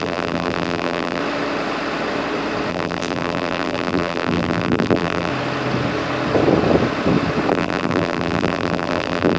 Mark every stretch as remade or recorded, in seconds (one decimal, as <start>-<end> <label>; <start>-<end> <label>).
0.0-1.2 remade; 1.2-2.7 recorded; 2.7-5.3 remade; 5.3-7.5 recorded; 7.5-9.4 remade